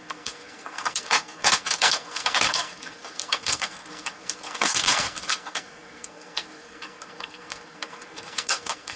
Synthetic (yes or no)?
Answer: yes